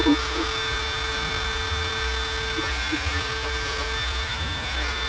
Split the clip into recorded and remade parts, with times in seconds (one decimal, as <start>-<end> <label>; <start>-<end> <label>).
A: 0.0-5.1 recorded